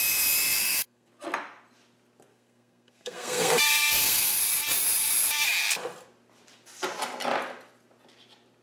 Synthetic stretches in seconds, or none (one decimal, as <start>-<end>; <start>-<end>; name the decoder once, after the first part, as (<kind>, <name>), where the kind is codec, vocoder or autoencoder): 0.6-1.1 (codec, SNAC); 2.3-4.4